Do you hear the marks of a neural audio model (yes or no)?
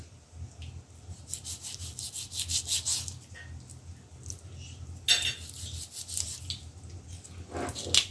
no